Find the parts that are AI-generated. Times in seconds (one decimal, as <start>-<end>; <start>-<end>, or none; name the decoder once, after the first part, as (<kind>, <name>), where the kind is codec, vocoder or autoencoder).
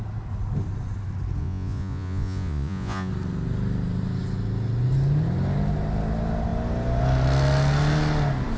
1.4-3.1 (vocoder, Vocos)